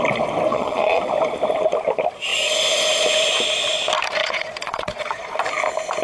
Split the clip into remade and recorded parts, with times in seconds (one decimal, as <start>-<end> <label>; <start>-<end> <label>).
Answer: 0.0-0.5 recorded; 0.5-1.0 remade; 1.0-4.2 recorded; 4.2-5.3 remade; 5.3-6.0 recorded